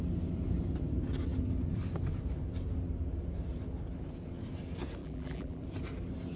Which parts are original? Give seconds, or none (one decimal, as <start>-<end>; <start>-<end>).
0.0-5.0; 5.6-6.4